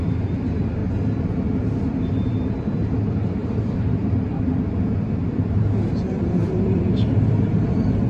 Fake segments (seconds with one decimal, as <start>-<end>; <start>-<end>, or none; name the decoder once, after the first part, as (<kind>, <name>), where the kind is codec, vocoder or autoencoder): 0.0-0.8 (vocoder, BigVGAN v2); 1.8-8.1